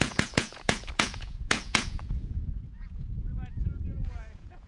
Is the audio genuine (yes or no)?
no